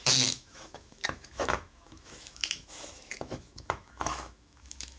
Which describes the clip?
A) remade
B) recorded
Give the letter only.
A